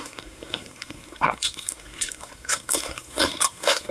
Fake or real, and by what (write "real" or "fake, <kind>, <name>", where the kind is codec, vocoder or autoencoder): fake, codec, SNAC